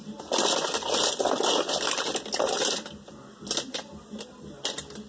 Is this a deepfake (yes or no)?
no